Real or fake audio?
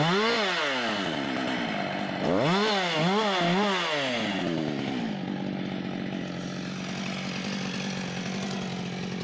real